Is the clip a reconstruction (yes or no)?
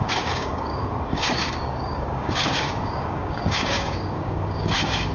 yes